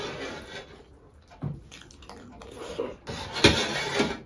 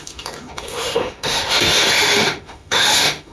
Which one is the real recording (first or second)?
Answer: first